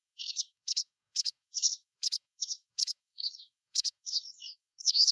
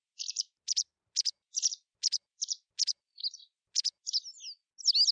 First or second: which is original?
second